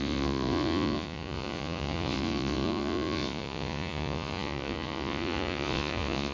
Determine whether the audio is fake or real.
fake